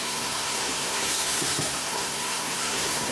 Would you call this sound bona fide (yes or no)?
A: no